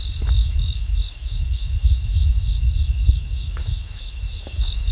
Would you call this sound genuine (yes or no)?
no